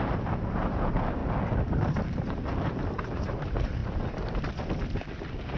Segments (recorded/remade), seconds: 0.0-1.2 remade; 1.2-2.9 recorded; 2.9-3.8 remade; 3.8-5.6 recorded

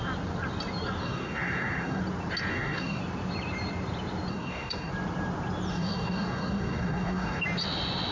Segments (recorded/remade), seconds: 0.0-1.0 recorded; 1.0-2.0 remade; 2.0-2.5 recorded; 2.5-3.0 remade; 3.0-4.3 recorded; 4.3-4.9 remade; 4.9-5.7 recorded; 5.7-7.4 remade; 7.4-8.1 recorded

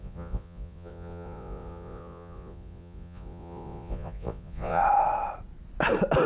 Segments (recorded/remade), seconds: 0.0-4.8 remade; 4.8-6.3 recorded